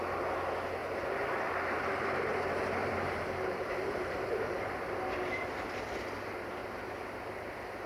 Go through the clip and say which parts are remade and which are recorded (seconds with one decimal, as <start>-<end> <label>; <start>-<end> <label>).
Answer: 0.0-0.8 recorded; 0.8-1.5 remade; 1.5-2.8 recorded; 2.8-4.9 remade; 4.9-6.6 recorded; 6.6-7.5 remade; 7.5-7.9 recorded